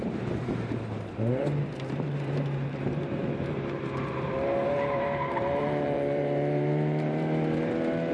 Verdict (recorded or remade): remade